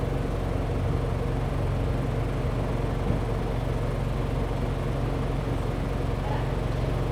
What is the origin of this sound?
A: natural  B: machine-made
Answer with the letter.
A